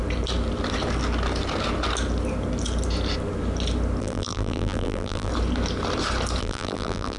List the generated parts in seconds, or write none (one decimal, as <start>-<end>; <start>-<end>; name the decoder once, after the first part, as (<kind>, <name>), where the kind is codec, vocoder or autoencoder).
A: 4.0-5.3 (vocoder, BigVGAN v2); 6.4-7.2

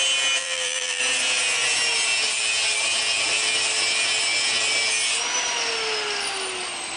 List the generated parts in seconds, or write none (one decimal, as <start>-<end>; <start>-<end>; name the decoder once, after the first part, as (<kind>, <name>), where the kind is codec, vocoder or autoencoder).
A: 0.4-1.0 (vocoder, BigVGAN v2)